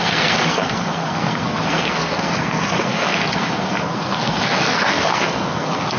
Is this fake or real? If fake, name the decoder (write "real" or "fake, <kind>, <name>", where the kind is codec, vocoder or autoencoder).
fake, codec, SNAC